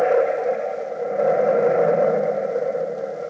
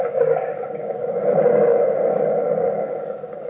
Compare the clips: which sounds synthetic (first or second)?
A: second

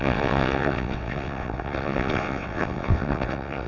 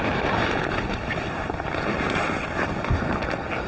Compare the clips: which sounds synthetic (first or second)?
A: first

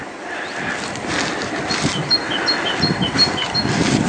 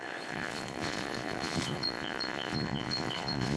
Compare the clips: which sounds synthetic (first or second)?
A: second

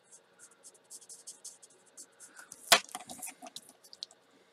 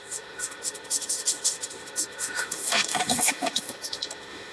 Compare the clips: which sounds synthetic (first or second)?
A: second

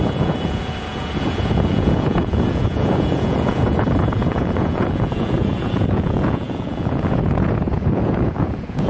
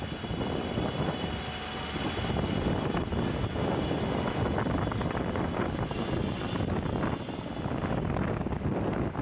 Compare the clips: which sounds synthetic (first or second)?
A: first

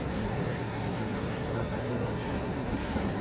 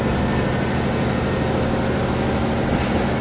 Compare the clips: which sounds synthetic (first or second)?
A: first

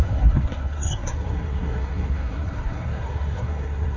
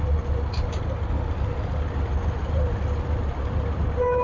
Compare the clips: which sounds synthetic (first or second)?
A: first